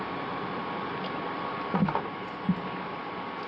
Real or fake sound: real